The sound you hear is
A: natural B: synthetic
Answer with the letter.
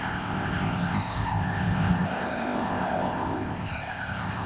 B